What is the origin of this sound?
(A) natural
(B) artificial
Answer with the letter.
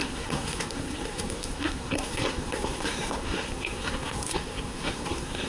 B